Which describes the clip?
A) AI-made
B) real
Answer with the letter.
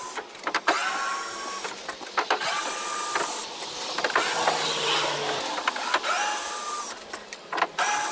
B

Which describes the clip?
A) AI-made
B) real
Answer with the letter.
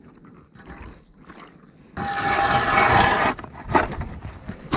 B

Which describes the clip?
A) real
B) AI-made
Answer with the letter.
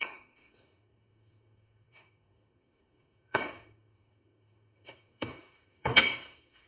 B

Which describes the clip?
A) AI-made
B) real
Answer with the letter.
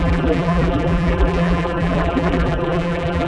A